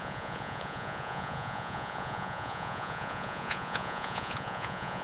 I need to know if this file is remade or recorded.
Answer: remade